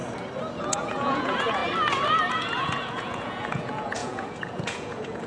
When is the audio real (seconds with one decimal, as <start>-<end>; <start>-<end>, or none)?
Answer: 0.0-0.6; 1.6-2.3